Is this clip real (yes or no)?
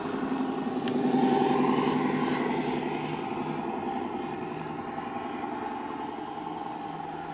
yes